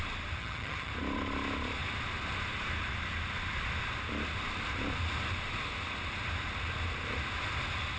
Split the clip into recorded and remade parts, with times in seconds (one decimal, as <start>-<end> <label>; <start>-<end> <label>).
0.0-0.4 recorded; 0.4-0.9 remade; 0.9-8.0 recorded